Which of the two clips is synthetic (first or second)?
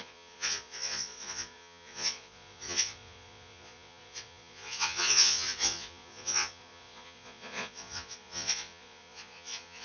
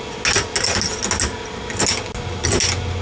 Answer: first